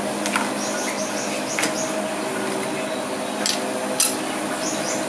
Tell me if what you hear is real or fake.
real